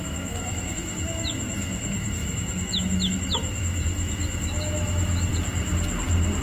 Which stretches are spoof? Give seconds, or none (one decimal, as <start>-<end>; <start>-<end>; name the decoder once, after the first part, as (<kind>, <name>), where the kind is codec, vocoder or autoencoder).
0.0-5.3 (autoencoder, DAC-VAE)